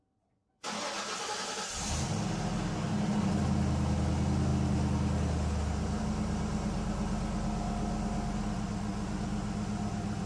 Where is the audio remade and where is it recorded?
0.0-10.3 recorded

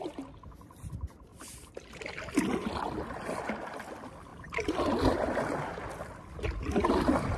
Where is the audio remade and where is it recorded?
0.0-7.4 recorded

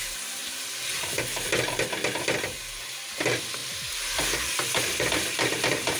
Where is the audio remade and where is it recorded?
0.0-3.6 recorded; 3.6-6.0 remade

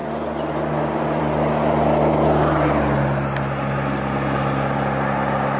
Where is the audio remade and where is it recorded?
0.0-5.6 recorded